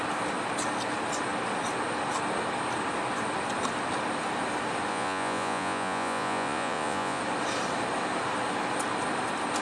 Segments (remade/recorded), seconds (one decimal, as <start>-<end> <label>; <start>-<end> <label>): 0.0-4.9 recorded; 4.9-7.2 remade; 7.2-9.6 recorded